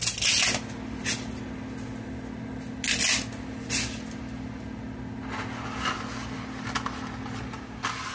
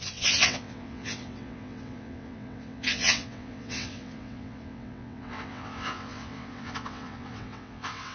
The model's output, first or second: second